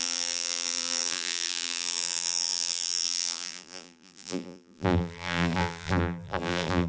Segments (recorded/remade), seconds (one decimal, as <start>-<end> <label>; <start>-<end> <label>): 0.0-6.9 remade